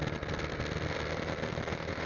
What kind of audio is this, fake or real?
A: real